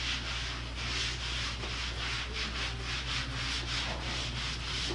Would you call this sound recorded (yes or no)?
yes